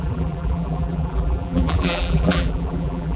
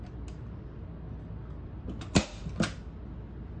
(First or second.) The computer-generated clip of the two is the first